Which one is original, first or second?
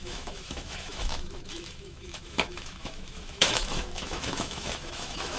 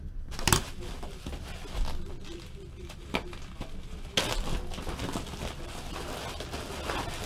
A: second